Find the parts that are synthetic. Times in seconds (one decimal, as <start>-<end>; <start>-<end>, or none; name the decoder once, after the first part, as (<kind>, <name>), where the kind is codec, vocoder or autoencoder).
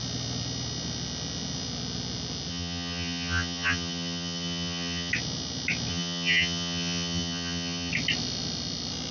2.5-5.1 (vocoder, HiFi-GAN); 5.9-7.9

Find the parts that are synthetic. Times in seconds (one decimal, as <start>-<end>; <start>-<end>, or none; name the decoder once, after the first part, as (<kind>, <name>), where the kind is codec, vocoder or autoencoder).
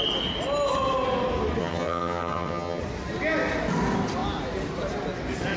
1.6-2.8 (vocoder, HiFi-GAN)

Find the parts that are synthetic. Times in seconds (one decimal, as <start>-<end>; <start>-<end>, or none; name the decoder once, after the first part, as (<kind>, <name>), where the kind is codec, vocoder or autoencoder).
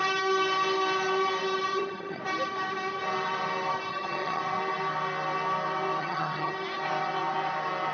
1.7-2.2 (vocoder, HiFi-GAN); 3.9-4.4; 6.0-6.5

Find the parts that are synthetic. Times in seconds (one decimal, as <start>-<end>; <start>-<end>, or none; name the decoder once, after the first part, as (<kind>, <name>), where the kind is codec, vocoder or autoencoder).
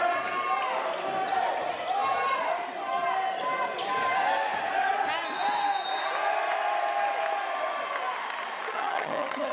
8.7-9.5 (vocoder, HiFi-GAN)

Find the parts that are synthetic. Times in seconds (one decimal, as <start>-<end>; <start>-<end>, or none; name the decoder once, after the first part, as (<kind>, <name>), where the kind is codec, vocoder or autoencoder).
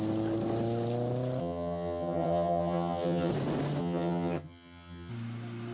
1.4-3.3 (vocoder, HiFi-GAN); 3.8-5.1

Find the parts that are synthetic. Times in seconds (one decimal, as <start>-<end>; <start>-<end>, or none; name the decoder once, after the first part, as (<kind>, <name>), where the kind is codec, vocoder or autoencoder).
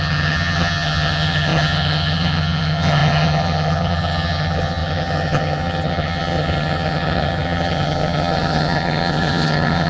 0.0-9.9 (vocoder, HiFi-GAN)